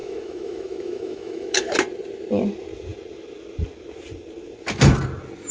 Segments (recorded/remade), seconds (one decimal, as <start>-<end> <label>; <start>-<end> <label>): 0.0-1.7 remade; 1.7-5.5 recorded